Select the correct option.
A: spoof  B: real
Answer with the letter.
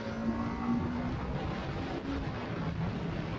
B